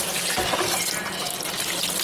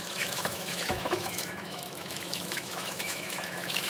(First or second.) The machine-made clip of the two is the second